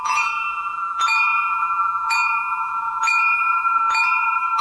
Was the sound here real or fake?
fake